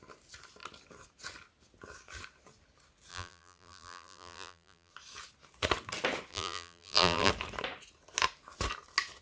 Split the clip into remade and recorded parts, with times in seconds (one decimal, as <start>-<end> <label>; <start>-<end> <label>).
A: 0.0-3.1 recorded; 3.1-4.9 remade; 4.9-6.3 recorded; 6.3-7.3 remade; 7.3-9.2 recorded